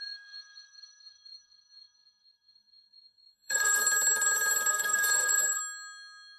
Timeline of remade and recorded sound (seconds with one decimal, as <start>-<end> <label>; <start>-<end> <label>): 0.0-3.8 remade; 3.8-4.7 recorded; 4.7-5.6 remade; 5.6-6.4 recorded